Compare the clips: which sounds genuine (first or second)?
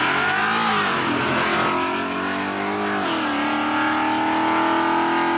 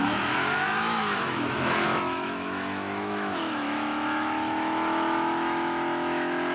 first